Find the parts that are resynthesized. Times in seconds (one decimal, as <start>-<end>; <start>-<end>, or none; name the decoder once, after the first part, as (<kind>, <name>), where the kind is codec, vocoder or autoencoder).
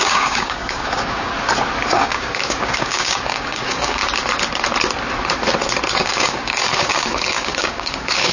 0.0-1.3 (codec, DAC); 1.9-4.0; 6.0-8.3